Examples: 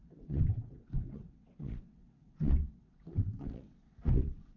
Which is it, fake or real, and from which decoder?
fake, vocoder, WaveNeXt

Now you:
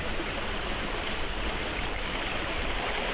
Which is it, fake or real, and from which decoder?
real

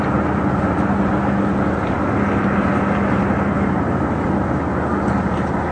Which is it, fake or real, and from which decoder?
real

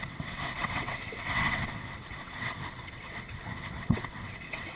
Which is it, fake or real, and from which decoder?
fake, vocoder, WaveNeXt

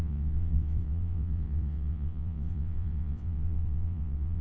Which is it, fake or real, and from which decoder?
fake, vocoder, WaveNeXt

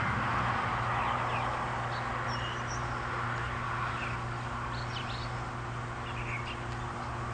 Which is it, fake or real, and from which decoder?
real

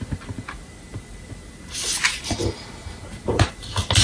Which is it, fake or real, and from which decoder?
real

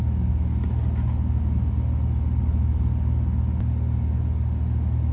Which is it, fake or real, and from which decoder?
real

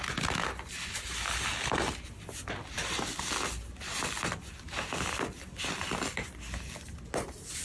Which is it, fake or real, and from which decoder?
real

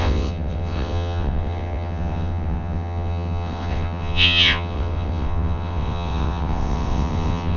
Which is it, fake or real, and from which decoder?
fake, vocoder, WaveNeXt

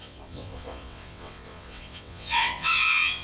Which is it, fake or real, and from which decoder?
fake, vocoder, WaveNeXt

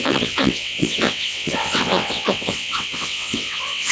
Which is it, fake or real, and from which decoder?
fake, vocoder, WaveNeXt